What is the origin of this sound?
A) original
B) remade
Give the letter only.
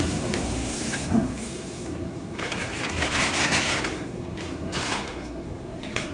B